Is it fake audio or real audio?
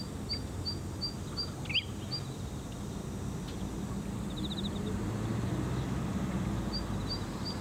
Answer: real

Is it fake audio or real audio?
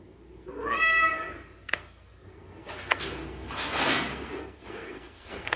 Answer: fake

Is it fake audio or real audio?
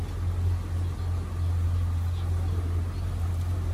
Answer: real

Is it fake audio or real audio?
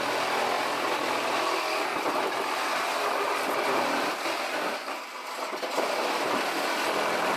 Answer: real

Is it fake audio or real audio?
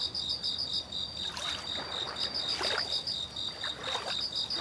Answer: real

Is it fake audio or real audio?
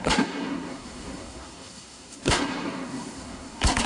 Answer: fake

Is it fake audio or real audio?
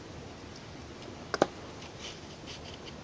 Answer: real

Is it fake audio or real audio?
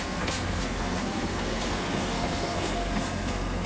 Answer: fake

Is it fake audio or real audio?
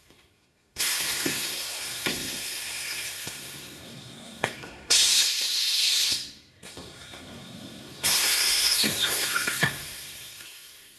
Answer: fake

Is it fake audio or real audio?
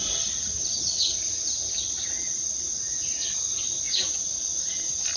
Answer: real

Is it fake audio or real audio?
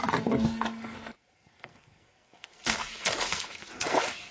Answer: fake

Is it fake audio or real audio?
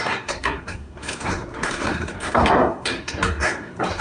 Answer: fake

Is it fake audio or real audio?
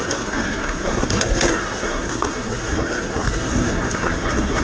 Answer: fake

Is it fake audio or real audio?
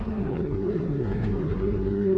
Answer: fake